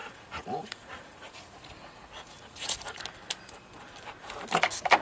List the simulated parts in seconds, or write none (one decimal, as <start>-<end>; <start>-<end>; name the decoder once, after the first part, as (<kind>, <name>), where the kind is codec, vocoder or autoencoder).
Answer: 0.0-3.0 (vocoder, Vocos)